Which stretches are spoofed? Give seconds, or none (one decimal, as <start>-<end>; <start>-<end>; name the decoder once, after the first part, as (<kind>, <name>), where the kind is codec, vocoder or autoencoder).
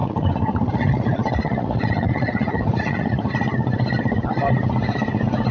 0.0-3.3 (vocoder, Vocos)